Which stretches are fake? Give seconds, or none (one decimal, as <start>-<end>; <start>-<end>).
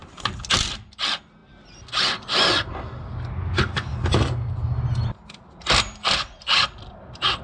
0.5-1.4; 5.8-7.4